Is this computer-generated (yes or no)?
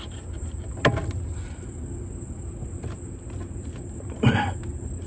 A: no